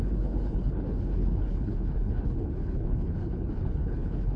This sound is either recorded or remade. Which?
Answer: remade